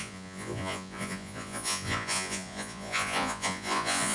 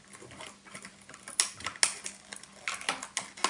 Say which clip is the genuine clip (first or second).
second